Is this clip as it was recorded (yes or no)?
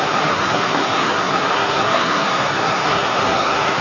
no